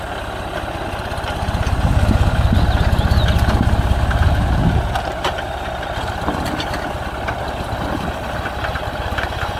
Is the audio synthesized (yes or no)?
no